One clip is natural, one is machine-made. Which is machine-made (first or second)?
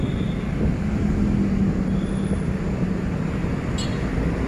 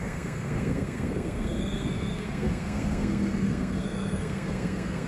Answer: second